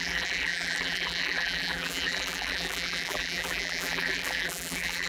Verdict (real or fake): fake